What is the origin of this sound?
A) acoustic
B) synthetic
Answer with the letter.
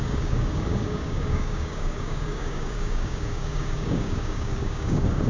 B